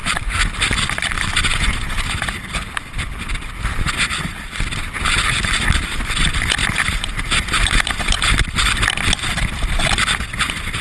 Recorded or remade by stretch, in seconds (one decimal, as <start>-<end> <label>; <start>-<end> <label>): 0.0-10.8 recorded